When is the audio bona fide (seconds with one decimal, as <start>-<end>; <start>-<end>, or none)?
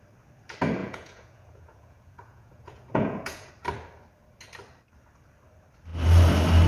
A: 0.0-0.8; 3.5-6.7